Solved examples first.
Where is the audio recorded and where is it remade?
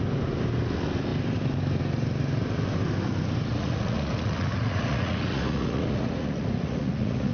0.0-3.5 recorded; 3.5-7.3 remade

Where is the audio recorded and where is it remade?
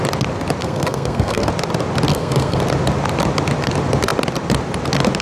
0.0-0.6 recorded; 0.6-1.5 remade; 1.5-2.1 recorded; 2.1-2.6 remade; 2.6-5.2 recorded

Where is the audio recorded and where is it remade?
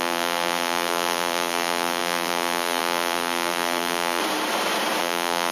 0.0-4.2 remade; 4.2-5.0 recorded; 5.0-5.5 remade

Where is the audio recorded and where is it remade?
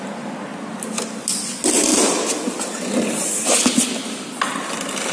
0.0-5.1 recorded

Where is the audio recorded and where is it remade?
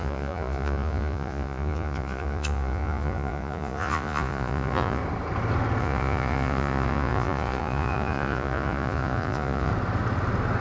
0.0-5.0 remade; 5.0-5.8 recorded; 5.8-9.7 remade; 9.7-10.6 recorded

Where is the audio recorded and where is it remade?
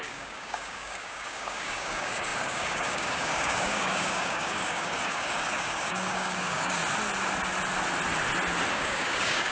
0.0-6.8 remade; 6.8-8.7 recorded; 8.7-9.5 remade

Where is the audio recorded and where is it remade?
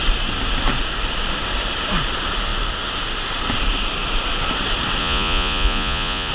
0.0-5.0 recorded; 5.0-6.3 remade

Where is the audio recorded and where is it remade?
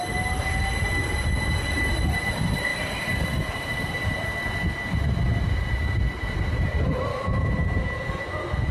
0.0-7.1 recorded; 7.1-8.7 remade